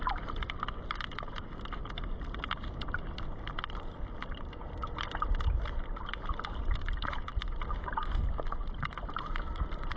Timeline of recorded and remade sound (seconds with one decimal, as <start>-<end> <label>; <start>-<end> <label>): 0.0-1.8 remade; 1.8-6.3 recorded; 6.3-7.3 remade; 7.3-7.8 recorded; 7.8-10.0 remade

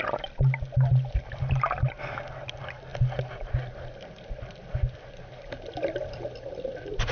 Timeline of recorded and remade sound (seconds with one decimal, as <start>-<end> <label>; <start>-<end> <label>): 0.0-7.1 recorded

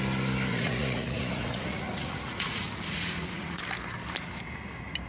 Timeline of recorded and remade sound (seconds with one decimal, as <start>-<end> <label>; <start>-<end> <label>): 0.0-0.5 recorded; 0.5-3.6 remade; 3.6-5.1 recorded

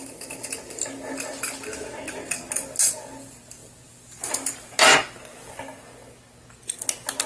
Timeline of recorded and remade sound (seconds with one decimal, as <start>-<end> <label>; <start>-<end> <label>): 0.0-7.3 recorded

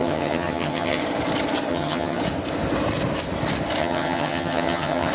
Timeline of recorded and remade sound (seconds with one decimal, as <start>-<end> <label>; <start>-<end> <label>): 0.0-1.0 remade; 1.0-1.7 recorded; 1.7-2.2 remade; 2.2-3.8 recorded; 3.8-5.1 remade